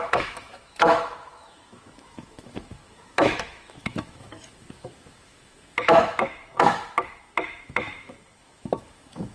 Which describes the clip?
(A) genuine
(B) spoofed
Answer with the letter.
B